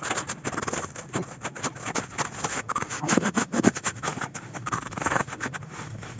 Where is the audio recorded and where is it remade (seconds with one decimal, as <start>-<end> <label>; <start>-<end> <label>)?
0.0-2.5 recorded; 2.5-6.2 remade